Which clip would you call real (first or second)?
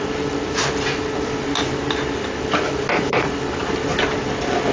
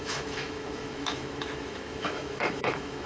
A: first